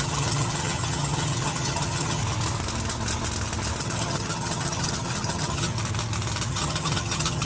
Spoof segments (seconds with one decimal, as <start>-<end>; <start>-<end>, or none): 0.0-2.2; 3.8-5.7; 6.5-7.4